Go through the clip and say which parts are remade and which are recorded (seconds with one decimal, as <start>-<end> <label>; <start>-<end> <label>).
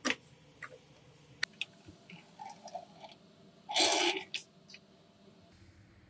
0.0-6.1 recorded